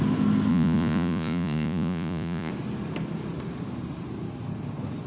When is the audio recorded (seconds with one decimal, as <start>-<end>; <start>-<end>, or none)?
0.0-0.5; 2.5-5.1